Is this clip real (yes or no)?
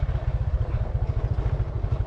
yes